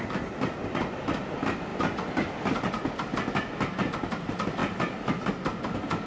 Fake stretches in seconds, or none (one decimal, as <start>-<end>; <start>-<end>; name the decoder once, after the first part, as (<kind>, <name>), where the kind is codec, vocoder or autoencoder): none